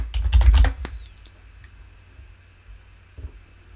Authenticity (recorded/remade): recorded